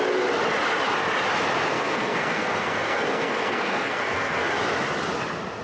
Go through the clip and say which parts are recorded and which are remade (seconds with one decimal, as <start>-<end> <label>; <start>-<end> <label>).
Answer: 0.0-1.7 recorded; 1.7-4.5 remade; 4.5-5.6 recorded